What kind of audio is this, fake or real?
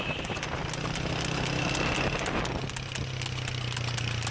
real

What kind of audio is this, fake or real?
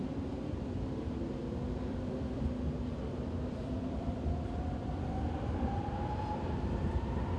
fake